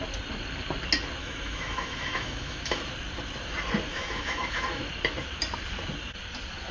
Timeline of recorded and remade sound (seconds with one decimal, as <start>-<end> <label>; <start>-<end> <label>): 0.0-1.2 recorded; 1.2-2.8 remade; 2.8-3.9 recorded; 3.9-4.8 remade; 4.8-6.7 recorded